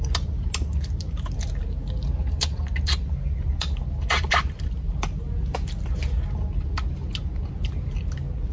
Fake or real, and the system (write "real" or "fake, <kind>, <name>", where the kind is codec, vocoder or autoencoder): real